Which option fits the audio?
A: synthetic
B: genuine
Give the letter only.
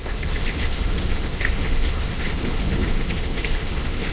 A